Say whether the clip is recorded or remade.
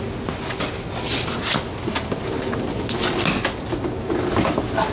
recorded